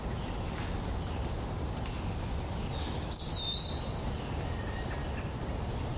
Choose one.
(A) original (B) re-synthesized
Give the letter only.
A